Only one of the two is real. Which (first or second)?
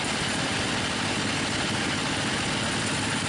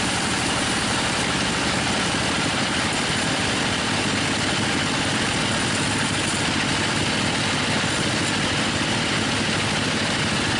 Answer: first